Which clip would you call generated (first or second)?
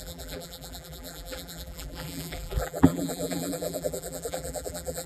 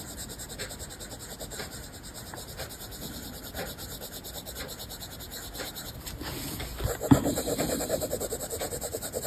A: first